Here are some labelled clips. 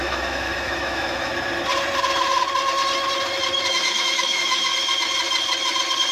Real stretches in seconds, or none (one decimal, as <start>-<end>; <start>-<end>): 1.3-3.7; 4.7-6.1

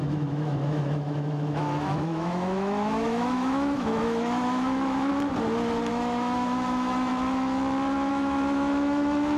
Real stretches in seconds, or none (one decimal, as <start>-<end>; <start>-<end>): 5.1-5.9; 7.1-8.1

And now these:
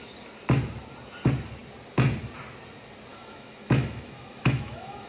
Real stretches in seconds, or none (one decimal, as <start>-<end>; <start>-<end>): 0.0-3.1

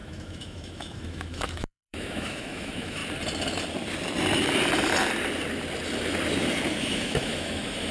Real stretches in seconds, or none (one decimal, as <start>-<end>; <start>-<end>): 3.0-6.8

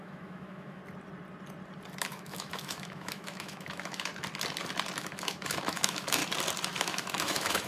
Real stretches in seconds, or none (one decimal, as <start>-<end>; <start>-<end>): 0.8-2.0; 4.1-5.0; 6.2-6.8

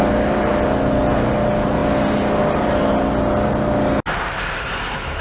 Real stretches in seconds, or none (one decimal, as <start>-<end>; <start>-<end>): 0.0-5.2